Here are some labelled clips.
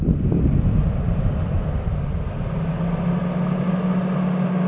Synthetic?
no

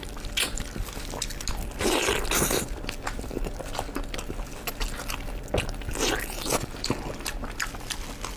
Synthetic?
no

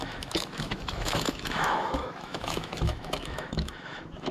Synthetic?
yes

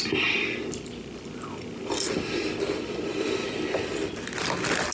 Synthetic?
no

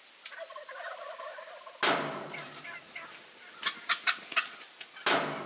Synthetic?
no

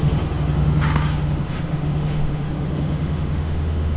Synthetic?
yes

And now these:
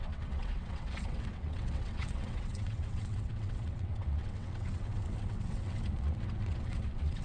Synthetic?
yes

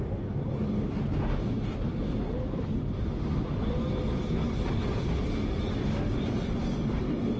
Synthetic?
no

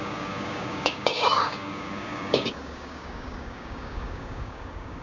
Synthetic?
yes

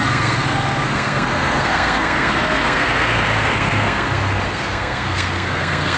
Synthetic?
yes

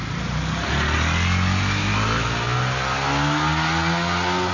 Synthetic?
no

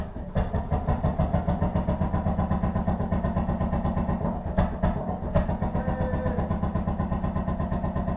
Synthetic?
no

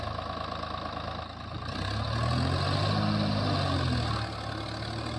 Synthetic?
no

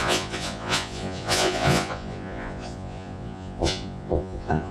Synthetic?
yes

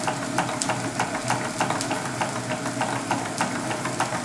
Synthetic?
no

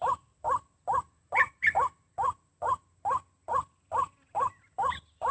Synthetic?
no